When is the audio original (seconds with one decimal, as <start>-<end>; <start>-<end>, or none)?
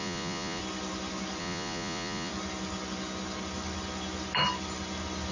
0.6-1.4; 2.3-5.3